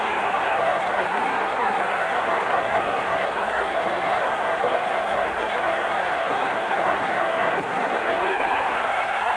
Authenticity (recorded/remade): remade